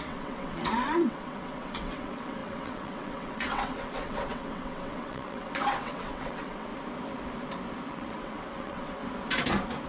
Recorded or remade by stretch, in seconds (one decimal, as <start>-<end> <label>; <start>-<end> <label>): 0.0-6.7 remade; 6.7-7.9 recorded; 7.9-9.0 remade; 9.0-9.9 recorded